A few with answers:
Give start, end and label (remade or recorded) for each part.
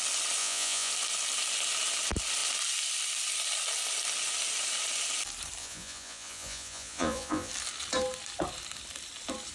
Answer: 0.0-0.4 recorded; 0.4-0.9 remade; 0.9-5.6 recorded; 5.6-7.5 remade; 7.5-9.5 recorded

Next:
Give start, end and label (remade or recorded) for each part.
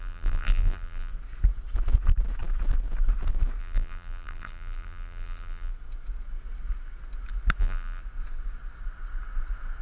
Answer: 0.0-1.1 remade; 1.1-3.6 recorded; 3.6-5.7 remade; 5.7-7.6 recorded; 7.6-8.0 remade; 8.0-9.8 recorded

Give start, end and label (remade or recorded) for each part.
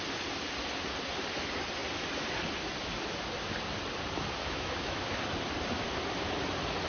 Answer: 0.0-4.4 recorded; 4.4-5.0 remade; 5.0-6.9 recorded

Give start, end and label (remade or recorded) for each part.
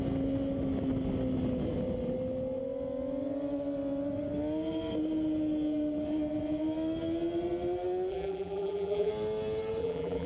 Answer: 0.0-8.1 recorded; 8.1-9.1 remade; 9.1-9.8 recorded; 9.8-10.3 remade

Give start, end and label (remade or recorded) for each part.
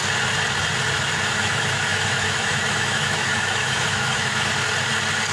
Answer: 0.0-1.3 recorded; 1.3-4.5 remade; 4.5-5.3 recorded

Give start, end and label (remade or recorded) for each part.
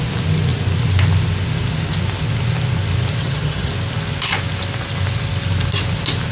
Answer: 0.0-3.2 recorded; 3.2-3.7 remade; 3.7-6.3 recorded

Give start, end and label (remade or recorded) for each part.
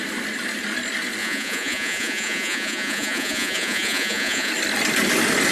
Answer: 0.0-1.2 recorded; 1.2-4.5 remade; 4.5-5.5 recorded